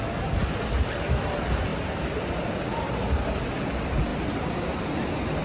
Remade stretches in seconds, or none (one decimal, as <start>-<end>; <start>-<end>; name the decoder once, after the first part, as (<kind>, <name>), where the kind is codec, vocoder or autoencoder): none